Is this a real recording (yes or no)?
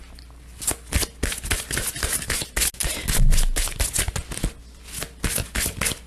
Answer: yes